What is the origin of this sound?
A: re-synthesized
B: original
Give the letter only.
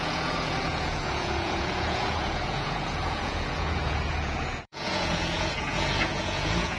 A